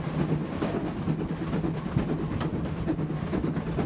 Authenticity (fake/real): real